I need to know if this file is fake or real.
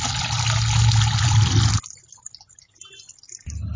real